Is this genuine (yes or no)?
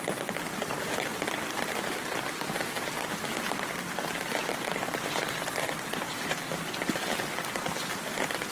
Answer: no